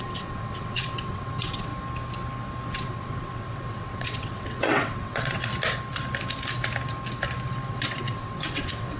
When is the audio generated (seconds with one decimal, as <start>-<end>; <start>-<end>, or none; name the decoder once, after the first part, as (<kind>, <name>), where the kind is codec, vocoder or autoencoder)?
0.0-1.7 (vocoder, WaveNeXt); 2.7-5.5; 7.7-9.0